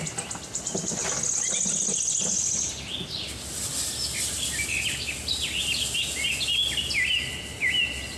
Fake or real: real